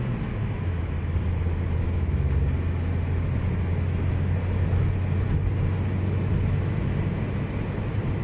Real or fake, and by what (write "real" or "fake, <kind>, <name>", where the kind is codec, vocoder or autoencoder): real